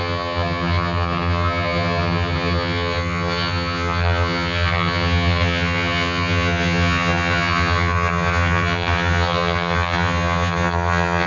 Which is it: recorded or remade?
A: remade